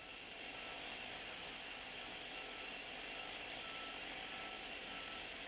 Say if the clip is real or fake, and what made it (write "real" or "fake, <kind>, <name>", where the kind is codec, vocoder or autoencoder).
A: real